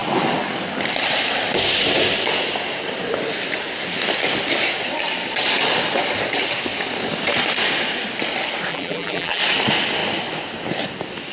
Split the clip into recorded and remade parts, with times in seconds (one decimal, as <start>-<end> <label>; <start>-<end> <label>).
0.0-8.7 recorded; 8.7-9.4 remade; 9.4-11.3 recorded

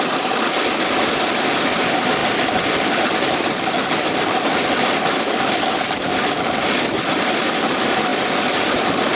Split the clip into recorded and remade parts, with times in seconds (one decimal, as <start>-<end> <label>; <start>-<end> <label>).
0.0-9.2 recorded

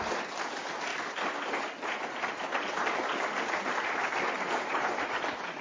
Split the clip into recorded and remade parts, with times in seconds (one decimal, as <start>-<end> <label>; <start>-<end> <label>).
0.0-0.9 remade; 0.9-4.3 recorded; 4.3-5.6 remade

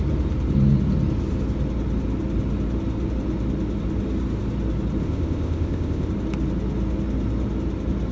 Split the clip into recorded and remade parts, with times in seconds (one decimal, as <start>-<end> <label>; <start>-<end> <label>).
0.0-5.0 recorded; 5.0-6.1 remade; 6.1-8.1 recorded

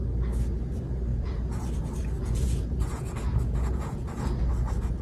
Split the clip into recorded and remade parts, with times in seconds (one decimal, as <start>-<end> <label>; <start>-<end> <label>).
0.0-1.1 recorded; 1.1-1.6 remade; 1.6-2.2 recorded; 2.2-4.4 remade; 4.4-5.0 recorded

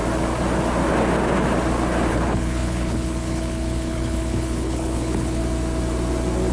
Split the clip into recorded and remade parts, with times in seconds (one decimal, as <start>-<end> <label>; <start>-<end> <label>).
0.0-2.1 recorded; 2.1-5.4 remade; 5.4-6.5 recorded